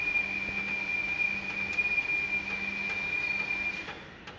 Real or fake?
real